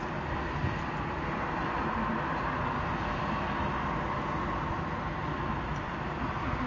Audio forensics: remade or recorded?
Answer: recorded